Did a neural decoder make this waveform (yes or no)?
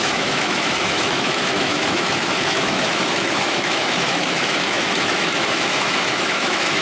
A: yes